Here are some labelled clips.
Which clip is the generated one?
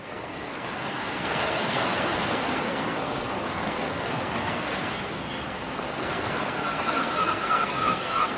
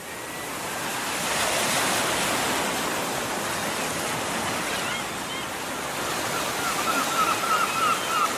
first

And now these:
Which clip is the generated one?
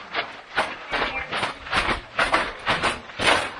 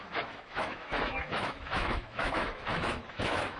second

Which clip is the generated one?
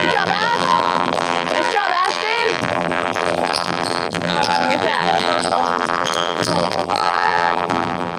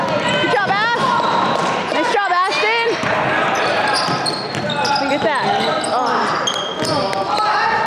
first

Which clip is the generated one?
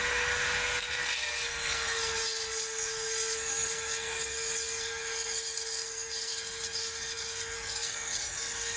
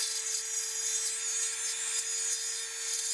first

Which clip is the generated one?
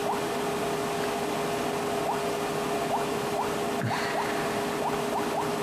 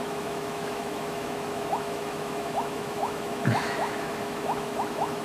second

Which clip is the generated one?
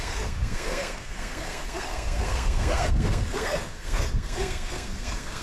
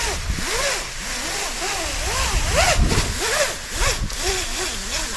first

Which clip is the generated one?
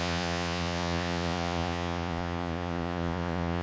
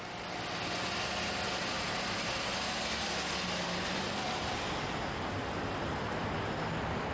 first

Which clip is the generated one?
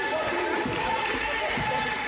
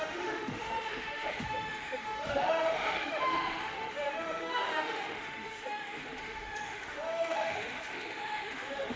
second